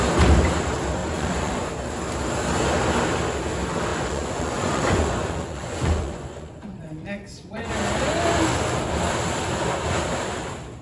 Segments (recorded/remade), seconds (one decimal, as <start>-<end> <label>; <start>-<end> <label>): 0.0-1.0 recorded; 1.0-1.7 remade; 1.7-3.9 recorded; 3.9-7.7 remade; 7.7-10.8 recorded